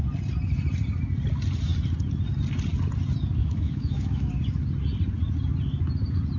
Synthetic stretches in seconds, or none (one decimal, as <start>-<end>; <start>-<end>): 3.4-4.3